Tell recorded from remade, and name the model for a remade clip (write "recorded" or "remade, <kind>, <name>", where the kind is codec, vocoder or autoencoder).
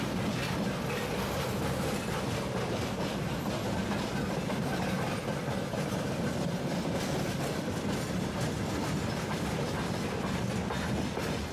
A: recorded